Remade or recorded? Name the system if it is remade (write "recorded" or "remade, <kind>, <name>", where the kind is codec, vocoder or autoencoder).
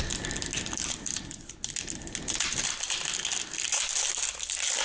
recorded